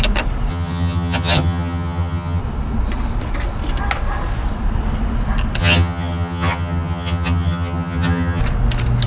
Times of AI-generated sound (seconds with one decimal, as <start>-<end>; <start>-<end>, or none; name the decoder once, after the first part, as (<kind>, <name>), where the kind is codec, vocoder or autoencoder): 0.5-2.4 (vocoder, HiFi-GAN); 5.6-8.4

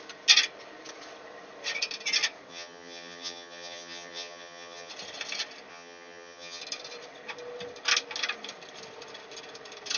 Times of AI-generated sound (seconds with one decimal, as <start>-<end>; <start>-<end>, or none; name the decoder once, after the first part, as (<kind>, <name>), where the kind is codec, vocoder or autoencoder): 2.5-4.9 (vocoder, HiFi-GAN); 5.7-6.6